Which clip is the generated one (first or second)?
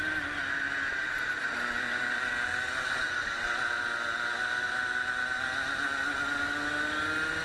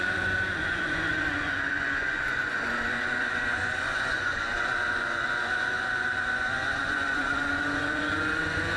second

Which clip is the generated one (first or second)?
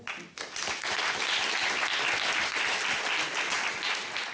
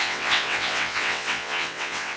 second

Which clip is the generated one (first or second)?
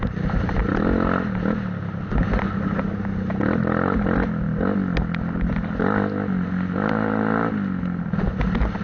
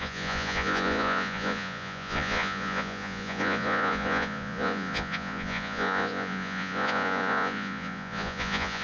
second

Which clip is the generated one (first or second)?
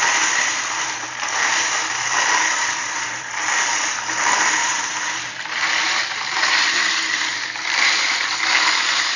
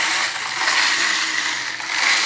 first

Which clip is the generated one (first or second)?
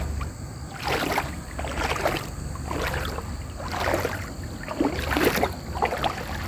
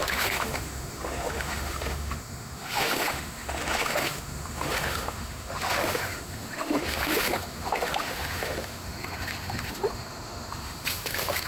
second